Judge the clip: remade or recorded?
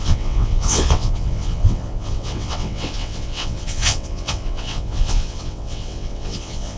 remade